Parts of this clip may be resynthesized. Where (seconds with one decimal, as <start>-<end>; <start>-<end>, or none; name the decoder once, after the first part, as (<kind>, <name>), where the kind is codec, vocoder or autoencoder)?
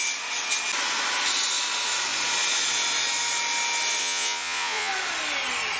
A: 4.0-4.9 (vocoder, Vocos)